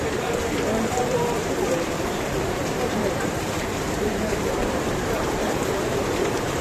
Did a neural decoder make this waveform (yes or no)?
yes